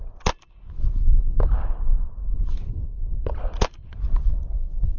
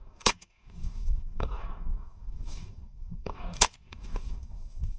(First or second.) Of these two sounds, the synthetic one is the second